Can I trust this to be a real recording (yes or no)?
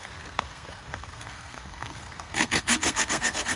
no